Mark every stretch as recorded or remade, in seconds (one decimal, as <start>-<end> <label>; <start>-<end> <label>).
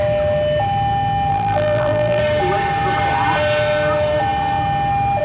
0.0-1.3 recorded; 1.3-2.2 remade; 2.2-5.2 recorded